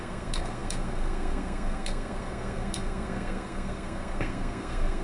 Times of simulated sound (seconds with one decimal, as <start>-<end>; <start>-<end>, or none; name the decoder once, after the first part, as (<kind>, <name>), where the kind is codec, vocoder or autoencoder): 0.0-5.0 (codec, SNAC)